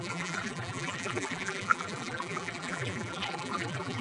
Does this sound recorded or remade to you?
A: remade